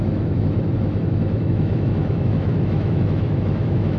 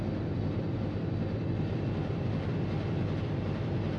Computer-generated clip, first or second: first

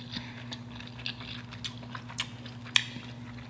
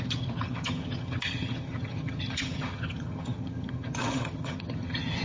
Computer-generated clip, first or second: second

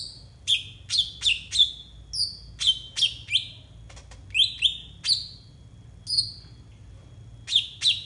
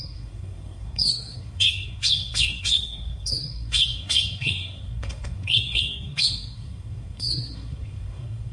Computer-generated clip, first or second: second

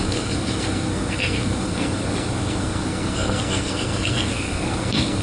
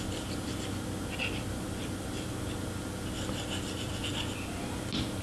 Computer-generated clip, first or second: first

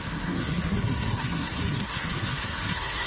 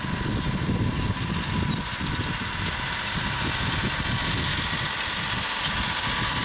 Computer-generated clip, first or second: first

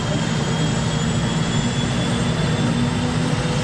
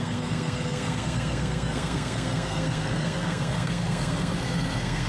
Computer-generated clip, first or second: second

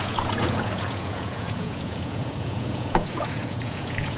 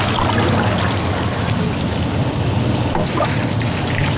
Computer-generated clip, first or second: first